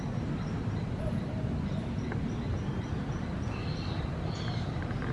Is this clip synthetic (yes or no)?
no